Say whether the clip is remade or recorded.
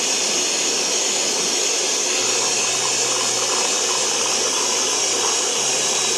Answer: recorded